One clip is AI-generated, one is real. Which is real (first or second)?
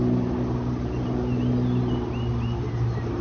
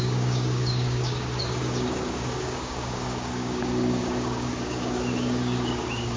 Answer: first